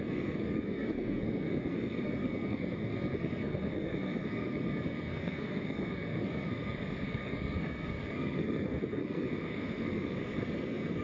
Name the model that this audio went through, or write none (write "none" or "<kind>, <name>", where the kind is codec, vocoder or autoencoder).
codec, SNAC